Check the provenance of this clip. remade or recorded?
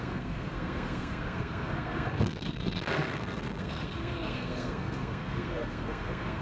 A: remade